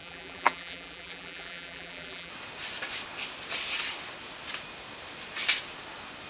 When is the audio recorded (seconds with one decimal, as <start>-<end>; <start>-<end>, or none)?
2.3-6.3